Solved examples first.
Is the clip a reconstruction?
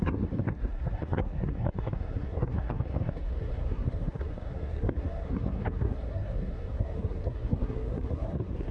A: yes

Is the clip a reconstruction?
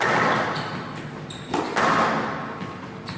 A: no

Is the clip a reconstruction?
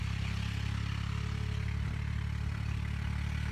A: no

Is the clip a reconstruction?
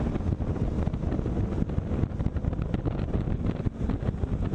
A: no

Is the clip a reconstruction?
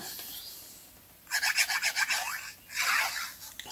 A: no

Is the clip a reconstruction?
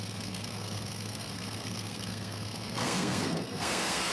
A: yes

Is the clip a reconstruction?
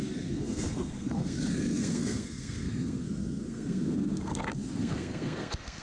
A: yes